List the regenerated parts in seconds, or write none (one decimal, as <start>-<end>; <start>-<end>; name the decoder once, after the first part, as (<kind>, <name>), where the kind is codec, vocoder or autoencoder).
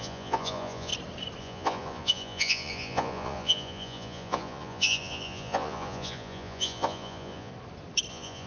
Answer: 0.0-0.9 (vocoder, Vocos); 1.4-7.5; 8.1-8.5